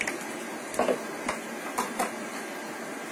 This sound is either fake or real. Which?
real